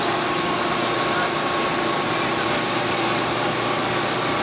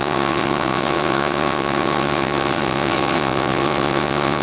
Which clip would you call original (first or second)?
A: first